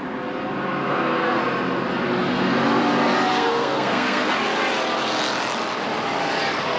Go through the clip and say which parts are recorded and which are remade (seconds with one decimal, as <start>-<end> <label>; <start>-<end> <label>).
0.0-0.8 recorded; 0.8-1.4 remade; 1.4-3.3 recorded; 3.3-4.3 remade; 4.3-6.8 recorded